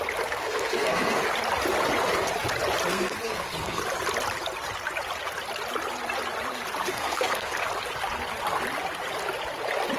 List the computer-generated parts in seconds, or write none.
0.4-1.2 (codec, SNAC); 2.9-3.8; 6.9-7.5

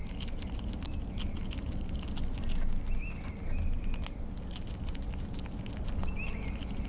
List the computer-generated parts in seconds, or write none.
none

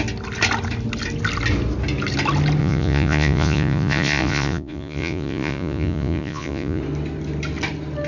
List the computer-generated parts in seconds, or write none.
2.6-6.8 (vocoder, Vocos)

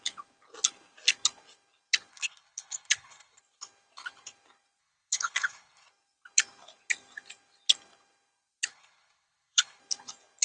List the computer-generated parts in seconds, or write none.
2.1-3.4 (codec, HILCodec); 4.8-5.9; 8.7-9.8

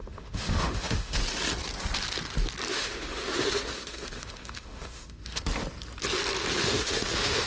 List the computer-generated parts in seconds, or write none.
0.0-1.2 (autoencoder, DAC-VAE); 2.7-5.4; 6.6-7.5

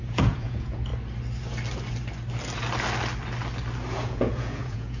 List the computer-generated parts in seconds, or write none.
0.0-0.9 (vocoder, Vocos); 3.9-5.0

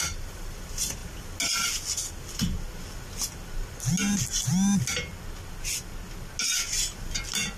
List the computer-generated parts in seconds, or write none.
none

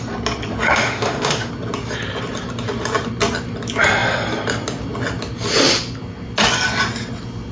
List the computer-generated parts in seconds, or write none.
0.7-1.5 (autoencoder, DAC-VAE)